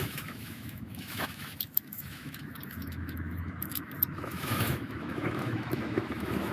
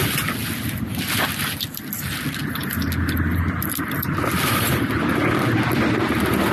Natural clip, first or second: second